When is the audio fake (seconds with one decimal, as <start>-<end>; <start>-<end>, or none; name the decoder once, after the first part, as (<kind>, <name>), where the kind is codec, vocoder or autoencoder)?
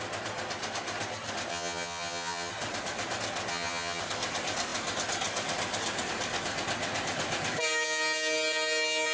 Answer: 1.5-2.5 (vocoder, HiFi-GAN); 3.5-4.0